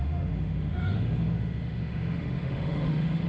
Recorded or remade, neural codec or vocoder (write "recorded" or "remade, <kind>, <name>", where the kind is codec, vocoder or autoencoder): remade, autoencoder, DAC-VAE